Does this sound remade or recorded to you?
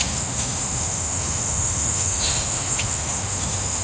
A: remade